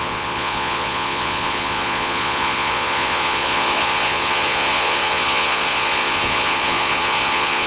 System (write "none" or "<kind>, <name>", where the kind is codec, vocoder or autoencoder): vocoder, Vocos